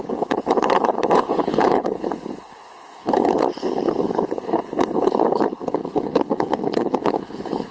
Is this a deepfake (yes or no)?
yes